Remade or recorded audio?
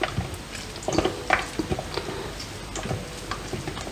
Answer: recorded